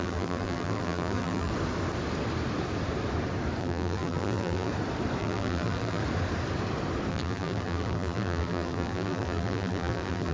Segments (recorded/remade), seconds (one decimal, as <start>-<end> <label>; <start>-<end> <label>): 0.0-1.5 remade; 1.5-3.6 recorded; 3.6-4.7 remade; 4.7-5.2 recorded; 5.2-6.0 remade; 6.0-7.1 recorded; 7.1-10.3 remade